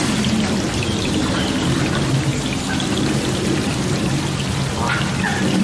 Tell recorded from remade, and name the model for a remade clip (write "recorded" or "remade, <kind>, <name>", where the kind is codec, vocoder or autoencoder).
recorded